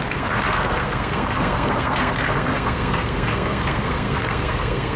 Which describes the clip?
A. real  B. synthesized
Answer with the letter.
B